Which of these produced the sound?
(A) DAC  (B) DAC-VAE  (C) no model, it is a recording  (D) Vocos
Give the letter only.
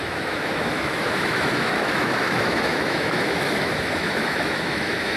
B